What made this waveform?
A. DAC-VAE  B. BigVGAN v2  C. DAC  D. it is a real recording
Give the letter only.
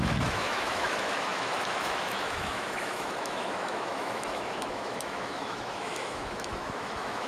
A